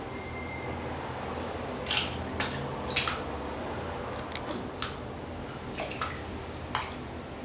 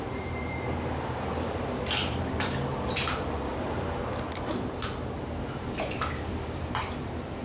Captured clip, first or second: first